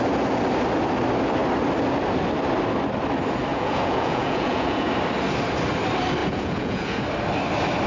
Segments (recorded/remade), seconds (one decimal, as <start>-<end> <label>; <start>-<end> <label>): 0.0-3.5 recorded; 3.5-4.9 remade; 4.9-6.2 recorded; 6.2-7.0 remade; 7.0-7.9 recorded